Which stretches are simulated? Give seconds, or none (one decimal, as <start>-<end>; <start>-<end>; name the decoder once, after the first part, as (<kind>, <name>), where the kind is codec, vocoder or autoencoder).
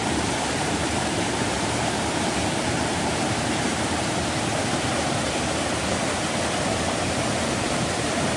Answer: 0.8-4.1 (vocoder, BigVGAN v2)